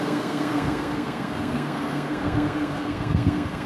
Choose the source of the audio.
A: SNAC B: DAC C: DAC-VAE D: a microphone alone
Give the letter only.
A